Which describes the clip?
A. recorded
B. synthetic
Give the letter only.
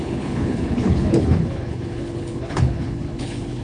B